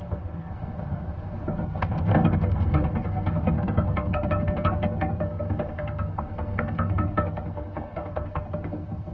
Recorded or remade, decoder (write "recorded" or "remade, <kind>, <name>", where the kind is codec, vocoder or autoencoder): remade, codec, SNAC